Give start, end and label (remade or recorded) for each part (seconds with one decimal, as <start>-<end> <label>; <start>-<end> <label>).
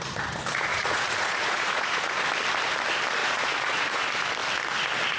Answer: 0.0-0.7 recorded; 0.7-2.2 remade; 2.2-3.2 recorded; 3.2-4.0 remade; 4.0-5.2 recorded